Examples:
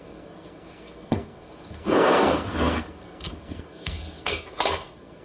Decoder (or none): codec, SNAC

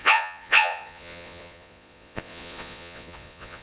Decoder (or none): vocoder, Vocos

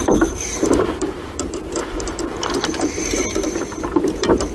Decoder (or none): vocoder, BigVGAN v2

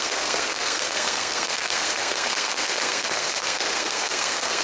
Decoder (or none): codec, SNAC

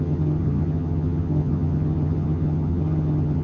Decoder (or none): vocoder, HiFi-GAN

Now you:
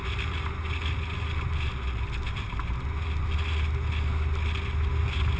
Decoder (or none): none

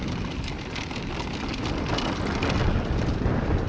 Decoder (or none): none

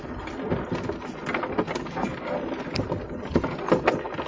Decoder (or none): none